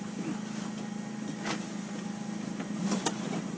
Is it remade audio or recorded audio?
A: recorded